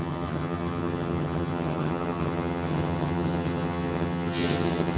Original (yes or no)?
no